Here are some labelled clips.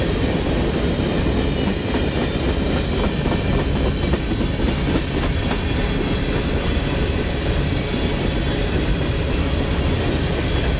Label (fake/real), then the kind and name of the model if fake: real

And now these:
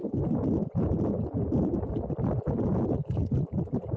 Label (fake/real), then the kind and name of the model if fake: real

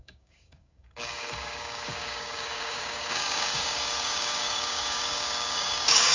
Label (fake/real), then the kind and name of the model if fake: fake, codec, DAC